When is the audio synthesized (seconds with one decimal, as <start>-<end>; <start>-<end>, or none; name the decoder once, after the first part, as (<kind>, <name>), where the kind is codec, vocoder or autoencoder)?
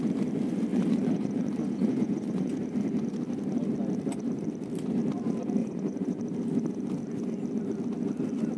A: 0.7-2.5 (vocoder, Vocos); 5.6-6.2